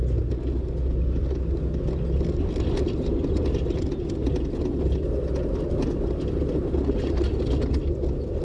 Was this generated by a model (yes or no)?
no